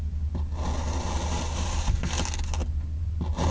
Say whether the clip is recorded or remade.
recorded